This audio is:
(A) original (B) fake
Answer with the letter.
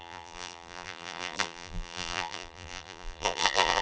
B